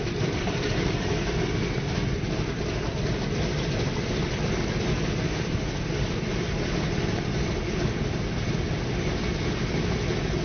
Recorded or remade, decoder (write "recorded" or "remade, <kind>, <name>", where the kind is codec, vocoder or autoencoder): recorded